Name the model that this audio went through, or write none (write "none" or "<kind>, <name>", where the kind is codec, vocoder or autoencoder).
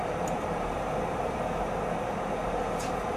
vocoder, BigVGAN v2